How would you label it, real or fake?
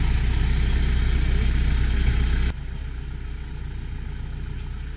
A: real